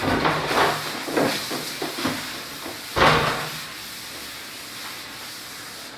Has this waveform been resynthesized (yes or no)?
no